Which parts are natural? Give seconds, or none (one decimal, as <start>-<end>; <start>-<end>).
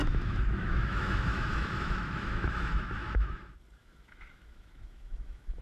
3.4-3.8